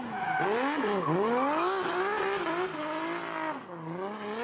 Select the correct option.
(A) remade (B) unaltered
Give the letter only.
B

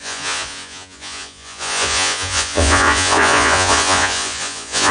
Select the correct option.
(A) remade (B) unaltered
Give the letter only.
A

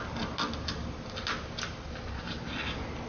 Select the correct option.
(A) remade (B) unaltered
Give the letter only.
B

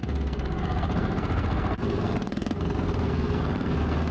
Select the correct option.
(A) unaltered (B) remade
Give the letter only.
B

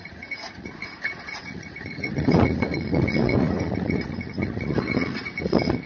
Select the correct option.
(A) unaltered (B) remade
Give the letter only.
B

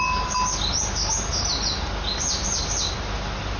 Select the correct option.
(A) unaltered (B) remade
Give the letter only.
A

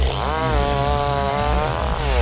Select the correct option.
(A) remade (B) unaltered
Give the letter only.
B